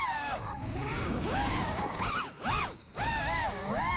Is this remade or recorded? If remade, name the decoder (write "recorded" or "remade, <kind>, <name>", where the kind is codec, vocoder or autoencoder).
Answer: remade, codec, DAC